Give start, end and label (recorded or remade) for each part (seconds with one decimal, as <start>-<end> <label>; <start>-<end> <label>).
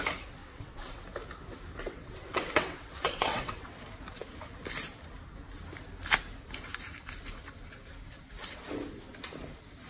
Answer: 0.0-0.4 recorded; 0.4-1.0 remade; 1.0-1.7 recorded; 1.7-3.8 remade; 3.8-9.9 recorded